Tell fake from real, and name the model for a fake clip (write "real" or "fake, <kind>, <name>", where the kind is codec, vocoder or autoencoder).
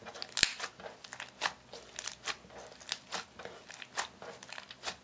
real